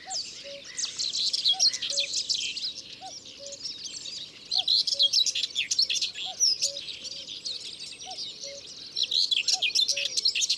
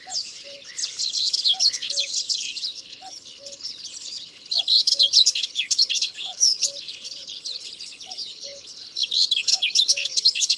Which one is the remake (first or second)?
second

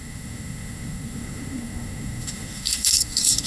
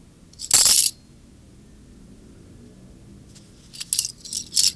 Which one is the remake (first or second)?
first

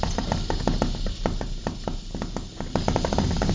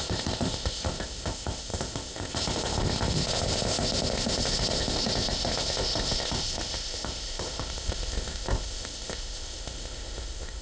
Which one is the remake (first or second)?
second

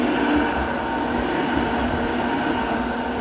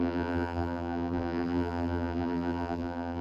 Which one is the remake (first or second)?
second